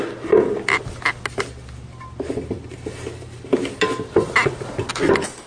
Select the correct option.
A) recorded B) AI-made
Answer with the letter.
A